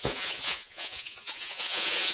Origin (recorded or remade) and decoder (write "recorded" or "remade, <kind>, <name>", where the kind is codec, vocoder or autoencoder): remade, vocoder, Vocos